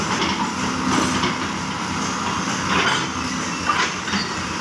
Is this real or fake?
real